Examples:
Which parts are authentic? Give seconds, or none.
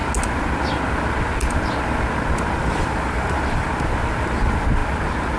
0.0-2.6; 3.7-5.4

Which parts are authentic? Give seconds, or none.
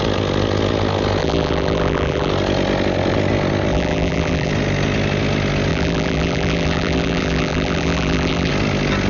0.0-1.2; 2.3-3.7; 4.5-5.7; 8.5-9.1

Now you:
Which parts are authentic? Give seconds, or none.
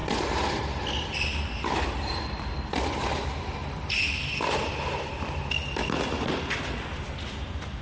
2.5-3.6; 5.5-7.8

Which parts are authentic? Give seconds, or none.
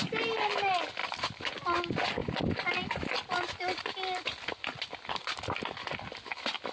0.0-1.0; 1.5-6.7